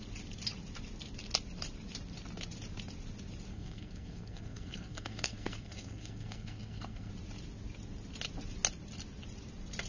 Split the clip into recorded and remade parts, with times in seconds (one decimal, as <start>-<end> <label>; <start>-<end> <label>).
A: 0.0-3.5 recorded; 3.5-7.1 remade; 7.1-9.9 recorded